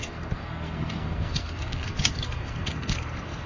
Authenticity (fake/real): fake